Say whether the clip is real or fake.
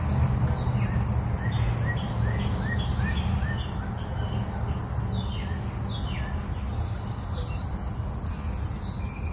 real